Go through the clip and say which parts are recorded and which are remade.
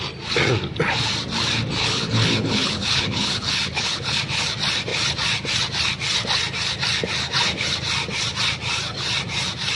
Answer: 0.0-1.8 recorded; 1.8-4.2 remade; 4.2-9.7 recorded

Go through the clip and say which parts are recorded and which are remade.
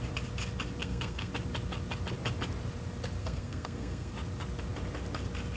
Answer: 0.0-0.8 recorded; 0.8-1.3 remade; 1.3-3.2 recorded; 3.2-4.1 remade; 4.1-5.6 recorded